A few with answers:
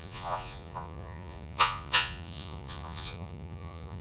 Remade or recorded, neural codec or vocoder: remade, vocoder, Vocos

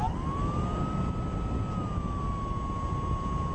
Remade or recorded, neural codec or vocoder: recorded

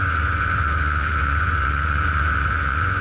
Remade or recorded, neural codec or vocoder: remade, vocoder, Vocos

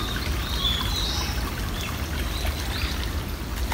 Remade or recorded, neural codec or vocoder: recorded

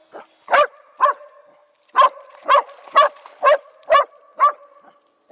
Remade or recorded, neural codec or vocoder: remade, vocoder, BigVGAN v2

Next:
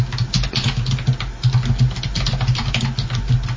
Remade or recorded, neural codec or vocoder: recorded